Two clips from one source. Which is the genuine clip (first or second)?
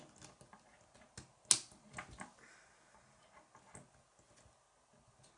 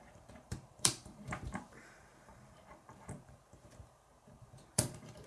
first